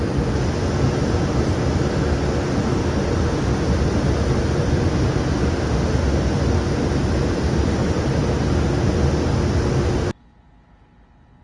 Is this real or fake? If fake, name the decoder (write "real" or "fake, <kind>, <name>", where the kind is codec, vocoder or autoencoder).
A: real